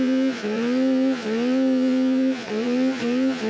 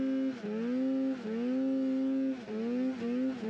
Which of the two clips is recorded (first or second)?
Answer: second